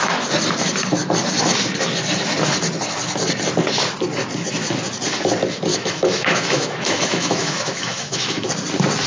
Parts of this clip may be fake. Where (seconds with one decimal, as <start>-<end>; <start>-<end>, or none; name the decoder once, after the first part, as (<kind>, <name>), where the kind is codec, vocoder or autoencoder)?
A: 5.7-8.5 (autoencoder, DAC-VAE)